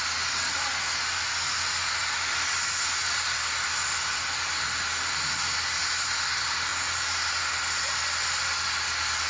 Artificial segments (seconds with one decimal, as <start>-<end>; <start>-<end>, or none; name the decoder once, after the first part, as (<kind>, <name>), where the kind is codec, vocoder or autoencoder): none